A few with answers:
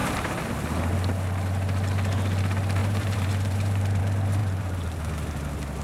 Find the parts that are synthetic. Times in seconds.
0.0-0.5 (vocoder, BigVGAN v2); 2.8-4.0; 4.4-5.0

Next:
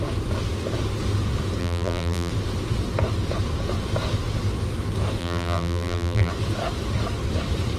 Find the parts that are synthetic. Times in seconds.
1.6-2.3 (vocoder, BigVGAN v2); 5.2-6.3

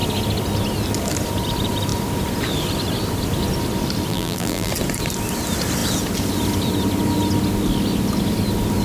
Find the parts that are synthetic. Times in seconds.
4.1-4.7 (vocoder, BigVGAN v2)

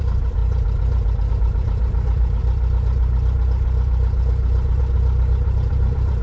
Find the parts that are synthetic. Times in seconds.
0.0-0.4 (vocoder, BigVGAN v2); 1.3-2.4; 4.8-6.2

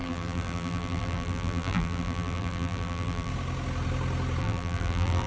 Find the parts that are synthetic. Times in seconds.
0.0-3.3 (vocoder, BigVGAN v2); 4.4-5.3

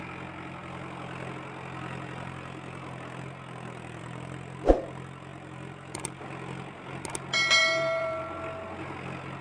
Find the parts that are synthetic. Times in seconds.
5.3-6.2 (vocoder, BigVGAN v2); 7.6-8.4

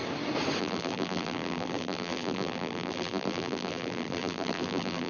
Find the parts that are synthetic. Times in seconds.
0.6-5.1 (vocoder, BigVGAN v2)

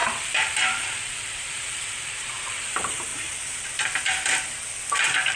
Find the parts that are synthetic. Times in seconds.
0.0-3.1 (vocoder, BigVGAN v2)